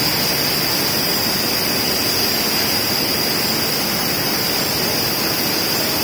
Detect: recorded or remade recorded